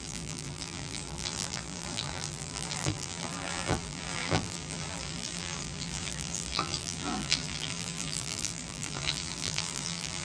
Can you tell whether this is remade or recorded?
remade